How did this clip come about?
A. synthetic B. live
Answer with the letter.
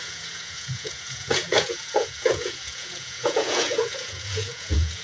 A